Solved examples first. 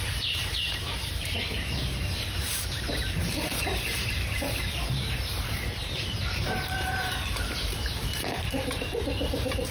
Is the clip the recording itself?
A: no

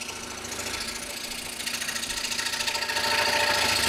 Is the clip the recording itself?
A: yes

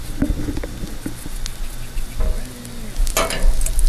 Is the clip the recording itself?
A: yes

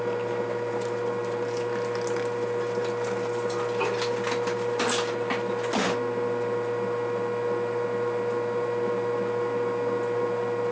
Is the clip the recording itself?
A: yes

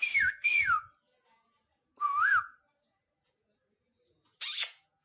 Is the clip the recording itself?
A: no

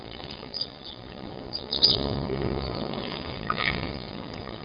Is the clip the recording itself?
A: no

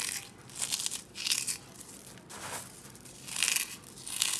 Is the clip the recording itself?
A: yes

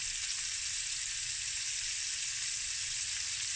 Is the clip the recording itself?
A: yes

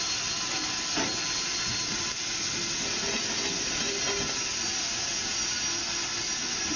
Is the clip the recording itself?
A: yes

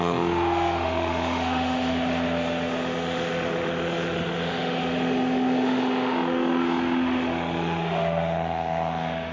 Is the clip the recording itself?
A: no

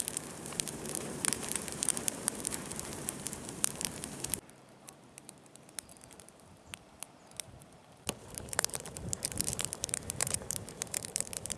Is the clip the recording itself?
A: no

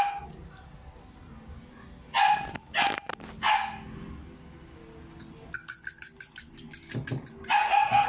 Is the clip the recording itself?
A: yes